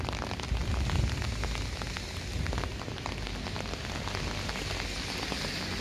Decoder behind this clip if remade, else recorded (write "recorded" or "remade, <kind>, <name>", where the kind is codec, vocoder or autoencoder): recorded